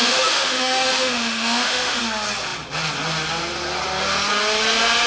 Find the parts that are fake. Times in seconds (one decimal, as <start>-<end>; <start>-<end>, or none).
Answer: 0.0-2.0